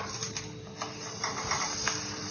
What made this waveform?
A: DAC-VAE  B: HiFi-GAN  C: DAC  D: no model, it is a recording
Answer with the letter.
D